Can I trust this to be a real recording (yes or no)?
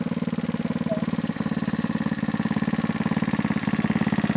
yes